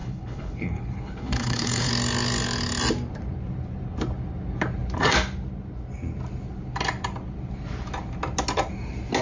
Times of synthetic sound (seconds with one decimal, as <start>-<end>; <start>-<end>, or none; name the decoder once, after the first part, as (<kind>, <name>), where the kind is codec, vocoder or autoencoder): 0.0-1.9 (codec, HILCodec)